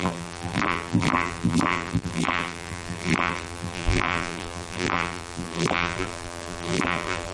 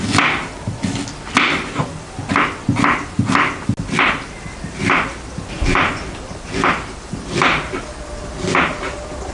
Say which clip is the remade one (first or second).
first